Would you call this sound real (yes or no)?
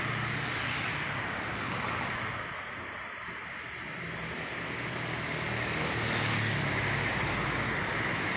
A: yes